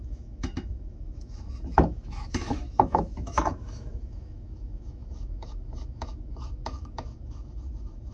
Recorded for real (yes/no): no